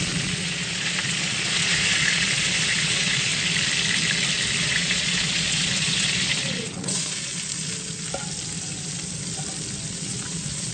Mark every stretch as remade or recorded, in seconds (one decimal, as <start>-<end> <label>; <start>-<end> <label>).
0.0-3.3 remade; 3.3-4.6 recorded; 4.6-7.3 remade; 7.3-9.9 recorded; 9.9-10.7 remade